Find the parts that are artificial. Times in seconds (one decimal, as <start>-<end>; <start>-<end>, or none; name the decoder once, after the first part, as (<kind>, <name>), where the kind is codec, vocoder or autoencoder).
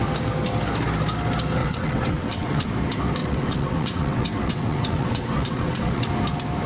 1.6-2.7 (vocoder, WaveNeXt); 3.2-6.1